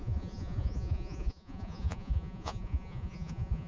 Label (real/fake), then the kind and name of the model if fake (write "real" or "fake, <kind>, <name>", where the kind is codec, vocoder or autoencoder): fake, vocoder, Vocos